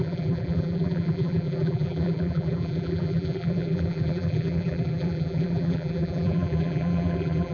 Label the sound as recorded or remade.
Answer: remade